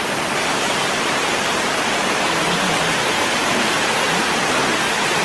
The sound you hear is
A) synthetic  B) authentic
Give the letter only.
A